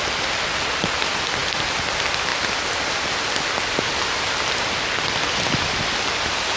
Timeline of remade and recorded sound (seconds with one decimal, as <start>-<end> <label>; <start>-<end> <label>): 0.0-6.6 recorded

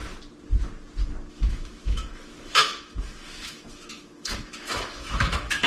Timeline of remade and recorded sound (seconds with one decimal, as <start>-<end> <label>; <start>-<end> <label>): 0.0-1.3 recorded; 1.3-5.7 remade

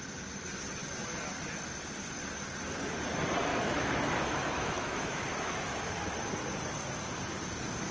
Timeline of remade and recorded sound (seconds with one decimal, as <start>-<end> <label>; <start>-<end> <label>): 0.0-3.5 recorded; 3.5-6.3 remade; 6.3-7.9 recorded